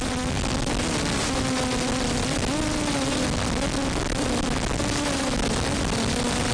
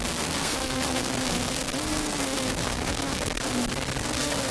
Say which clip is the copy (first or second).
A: second